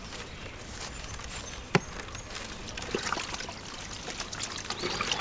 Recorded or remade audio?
recorded